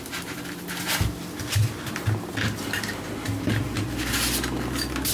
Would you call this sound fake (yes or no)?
no